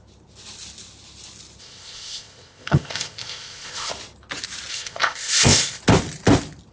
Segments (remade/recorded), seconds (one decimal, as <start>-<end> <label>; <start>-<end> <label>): 0.0-1.6 recorded; 1.6-3.9 remade; 3.9-4.7 recorded; 4.7-5.8 remade; 5.8-6.7 recorded